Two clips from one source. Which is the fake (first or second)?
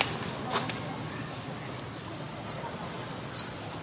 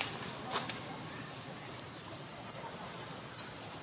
second